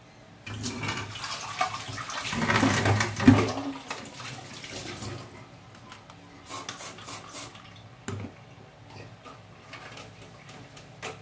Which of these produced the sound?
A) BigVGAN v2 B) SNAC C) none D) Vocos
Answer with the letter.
C